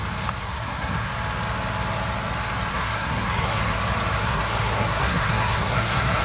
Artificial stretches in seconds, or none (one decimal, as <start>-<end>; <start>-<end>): 0.4-1.1; 2.7-3.8; 4.2-6.2